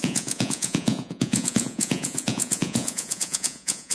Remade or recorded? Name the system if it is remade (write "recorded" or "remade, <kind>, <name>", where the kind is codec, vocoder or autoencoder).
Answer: remade, vocoder, Vocos